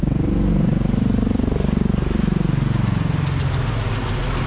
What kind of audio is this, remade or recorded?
recorded